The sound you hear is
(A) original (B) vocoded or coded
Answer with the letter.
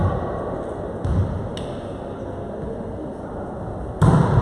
A